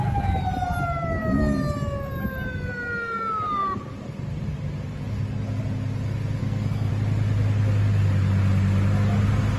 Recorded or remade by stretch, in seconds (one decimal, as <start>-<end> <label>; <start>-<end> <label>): 0.0-6.4 recorded; 6.4-6.9 remade; 6.9-9.6 recorded